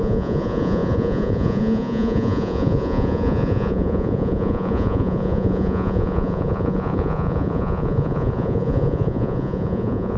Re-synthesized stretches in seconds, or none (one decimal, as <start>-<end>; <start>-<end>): 0.0-10.2